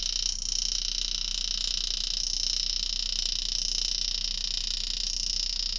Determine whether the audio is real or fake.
real